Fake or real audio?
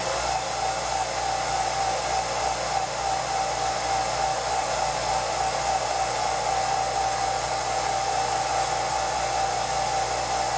real